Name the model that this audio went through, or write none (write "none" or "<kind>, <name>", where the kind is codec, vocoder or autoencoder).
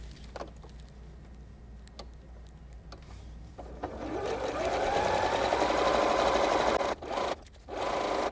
none